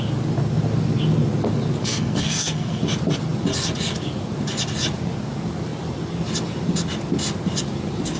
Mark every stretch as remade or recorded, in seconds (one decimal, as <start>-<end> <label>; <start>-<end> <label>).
0.0-1.8 recorded; 1.8-2.8 remade; 2.8-8.2 recorded